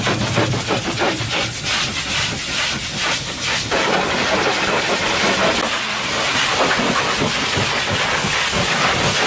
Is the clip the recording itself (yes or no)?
yes